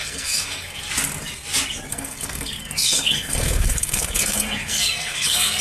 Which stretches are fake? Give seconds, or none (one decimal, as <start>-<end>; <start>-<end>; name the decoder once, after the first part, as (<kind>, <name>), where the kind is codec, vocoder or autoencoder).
0.0-0.9 (codec, SNAC); 1.9-5.6